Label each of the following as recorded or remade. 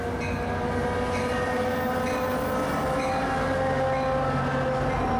recorded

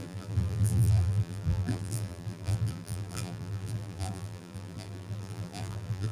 remade